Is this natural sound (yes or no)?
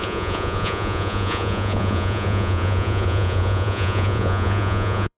no